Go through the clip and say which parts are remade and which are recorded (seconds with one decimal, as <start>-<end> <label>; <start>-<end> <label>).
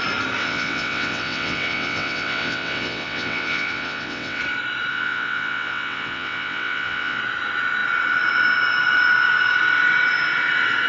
0.0-0.4 recorded; 0.4-4.4 remade; 4.4-4.9 recorded; 4.9-7.2 remade; 7.2-10.9 recorded